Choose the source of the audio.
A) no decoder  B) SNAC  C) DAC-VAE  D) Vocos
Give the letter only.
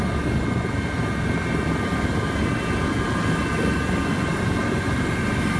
A